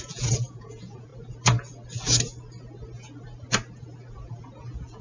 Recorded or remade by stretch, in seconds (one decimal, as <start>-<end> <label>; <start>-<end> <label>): 0.0-1.1 remade; 1.1-4.1 recorded; 4.1-5.0 remade

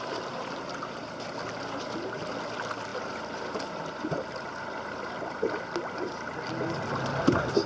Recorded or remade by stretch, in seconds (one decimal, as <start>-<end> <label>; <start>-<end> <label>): 0.0-7.7 recorded

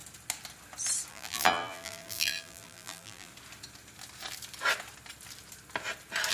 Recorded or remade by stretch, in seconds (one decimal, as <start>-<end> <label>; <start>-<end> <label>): 0.0-1.1 recorded; 1.1-3.3 remade; 3.3-6.3 recorded

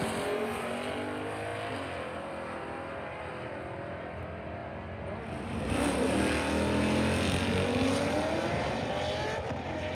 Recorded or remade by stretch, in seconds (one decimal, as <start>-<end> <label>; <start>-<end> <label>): 0.0-9.9 recorded

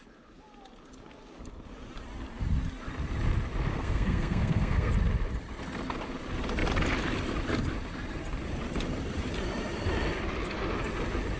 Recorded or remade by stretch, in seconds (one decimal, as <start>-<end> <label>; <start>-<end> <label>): 0.0-3.7 recorded; 3.7-4.9 remade; 4.9-11.4 recorded

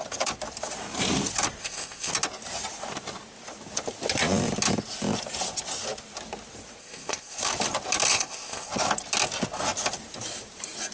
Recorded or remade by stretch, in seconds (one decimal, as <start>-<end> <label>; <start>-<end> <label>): 0.0-1.6 recorded; 1.6-2.1 remade; 2.1-6.8 recorded; 6.8-7.4 remade; 7.4-8.1 recorded; 8.1-8.7 remade; 8.7-10.9 recorded